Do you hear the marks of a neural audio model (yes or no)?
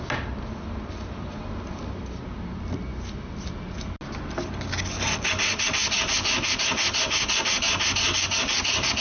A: no